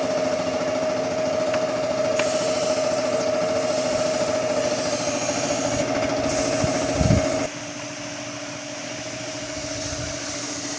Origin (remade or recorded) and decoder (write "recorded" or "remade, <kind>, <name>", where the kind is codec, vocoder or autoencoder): recorded